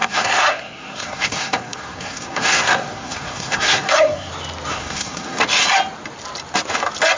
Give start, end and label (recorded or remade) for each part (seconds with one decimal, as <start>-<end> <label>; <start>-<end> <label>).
0.0-4.3 remade; 4.3-4.7 recorded; 4.7-5.4 remade; 5.4-7.2 recorded